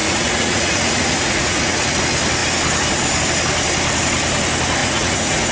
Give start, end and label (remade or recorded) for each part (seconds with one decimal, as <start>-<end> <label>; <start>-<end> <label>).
0.0-2.0 remade; 2.0-4.8 recorded; 4.8-5.5 remade